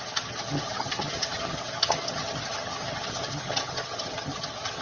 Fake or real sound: fake